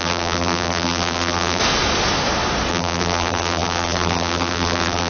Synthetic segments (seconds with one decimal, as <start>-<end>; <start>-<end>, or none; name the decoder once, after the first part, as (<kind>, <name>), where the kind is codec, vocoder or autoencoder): 0.0-1.6 (vocoder, BigVGAN v2); 2.7-5.1